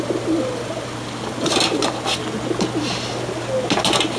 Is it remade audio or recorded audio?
recorded